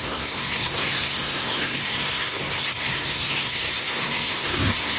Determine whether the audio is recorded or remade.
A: remade